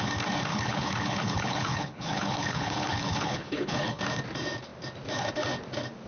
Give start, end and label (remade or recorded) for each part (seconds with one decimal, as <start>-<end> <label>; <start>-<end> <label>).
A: 0.0-0.5 recorded; 0.5-4.0 remade; 4.0-6.1 recorded